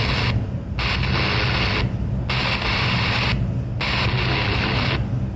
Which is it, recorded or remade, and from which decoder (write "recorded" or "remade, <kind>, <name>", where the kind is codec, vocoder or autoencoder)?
recorded